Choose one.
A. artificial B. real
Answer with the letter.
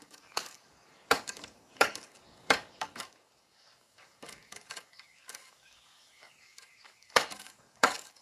A